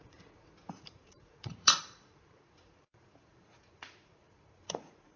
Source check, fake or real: fake